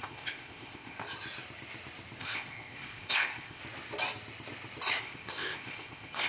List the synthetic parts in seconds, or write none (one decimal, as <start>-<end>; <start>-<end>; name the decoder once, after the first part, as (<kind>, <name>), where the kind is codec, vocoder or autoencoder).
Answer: 0.0-1.0 (codec, ZipCodec); 2.2-3.6; 5.0-6.3